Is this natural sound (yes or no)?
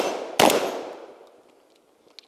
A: yes